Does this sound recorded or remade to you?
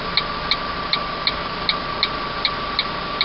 recorded